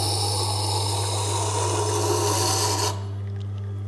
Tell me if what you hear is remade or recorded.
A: recorded